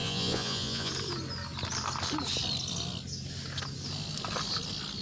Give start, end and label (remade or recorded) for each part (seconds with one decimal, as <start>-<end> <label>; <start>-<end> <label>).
0.0-0.9 remade; 0.9-5.0 recorded